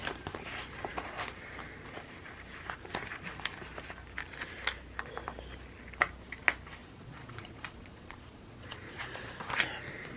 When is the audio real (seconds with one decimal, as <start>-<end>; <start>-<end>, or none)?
0.0-6.8; 9.0-10.2